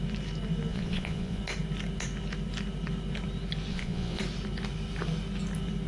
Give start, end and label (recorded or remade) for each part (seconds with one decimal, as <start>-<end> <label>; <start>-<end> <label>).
0.0-0.7 recorded; 0.7-1.4 remade; 1.4-3.7 recorded; 3.7-4.2 remade; 4.2-5.9 recorded